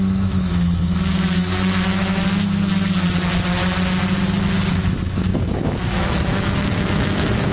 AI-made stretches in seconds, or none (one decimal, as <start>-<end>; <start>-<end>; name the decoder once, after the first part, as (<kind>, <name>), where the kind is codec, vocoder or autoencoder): 0.0-2.2 (autoencoder, DAC-VAE); 4.7-7.5